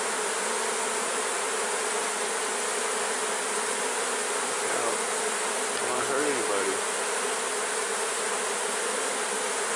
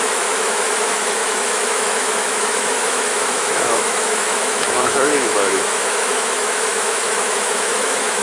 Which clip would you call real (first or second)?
first